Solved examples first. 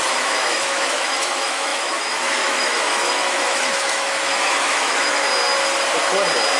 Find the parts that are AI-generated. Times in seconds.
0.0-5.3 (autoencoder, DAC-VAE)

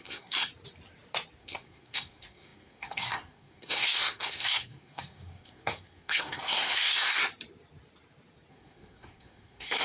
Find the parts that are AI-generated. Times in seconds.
0.0-0.5 (codec, SNAC); 1.4-7.2; 8.5-9.8

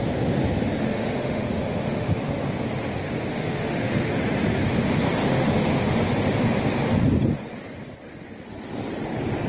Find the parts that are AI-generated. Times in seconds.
0.8-2.2 (autoencoder, DAC-VAE); 3.3-4.1; 5.2-5.9

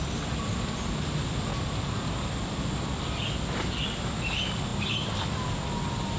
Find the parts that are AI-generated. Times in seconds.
none

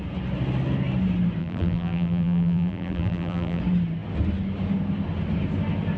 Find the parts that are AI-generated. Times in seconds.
1.4-3.6 (vocoder, BigVGAN v2)

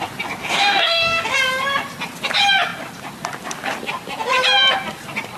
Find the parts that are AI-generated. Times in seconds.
0.4-1.2 (codec, DAC)

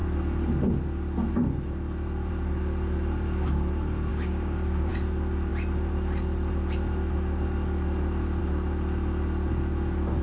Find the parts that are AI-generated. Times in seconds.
4.1-4.9 (codec, DAC)

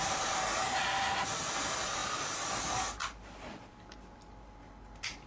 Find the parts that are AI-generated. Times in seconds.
none